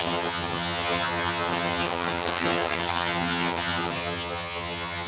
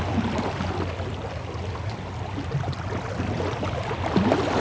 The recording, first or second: second